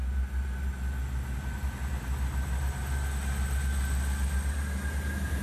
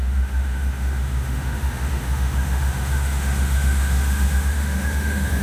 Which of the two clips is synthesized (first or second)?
second